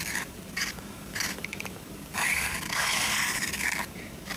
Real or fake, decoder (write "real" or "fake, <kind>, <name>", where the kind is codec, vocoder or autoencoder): fake, codec, DAC